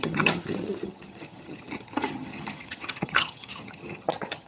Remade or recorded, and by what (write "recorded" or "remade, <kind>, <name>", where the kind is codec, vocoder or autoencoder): remade, vocoder, HiFi-GAN